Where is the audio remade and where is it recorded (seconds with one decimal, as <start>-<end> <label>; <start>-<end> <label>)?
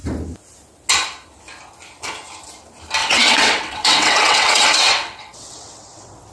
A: 0.0-3.0 recorded; 3.0-6.3 remade